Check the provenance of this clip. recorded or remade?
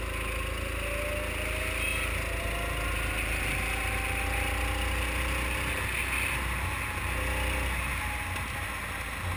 recorded